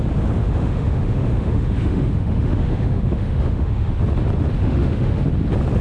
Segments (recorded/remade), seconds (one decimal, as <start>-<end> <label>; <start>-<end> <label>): 0.0-0.4 recorded; 0.4-3.9 remade; 3.9-4.6 recorded; 4.6-5.2 remade; 5.2-5.8 recorded

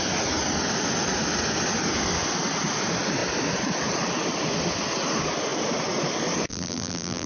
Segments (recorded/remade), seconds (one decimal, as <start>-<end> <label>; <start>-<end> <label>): 0.0-6.5 recorded; 6.5-7.3 remade

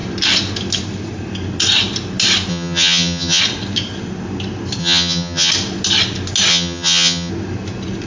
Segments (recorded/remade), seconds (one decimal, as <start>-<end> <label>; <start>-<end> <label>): 0.0-2.5 recorded; 2.5-3.4 remade; 3.4-4.8 recorded; 4.8-5.5 remade; 5.5-6.5 recorded; 6.5-7.3 remade; 7.3-8.1 recorded

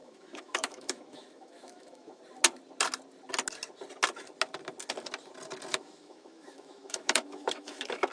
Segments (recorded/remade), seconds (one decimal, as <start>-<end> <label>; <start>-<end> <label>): 0.0-2.2 remade; 2.2-5.7 recorded; 5.7-8.1 remade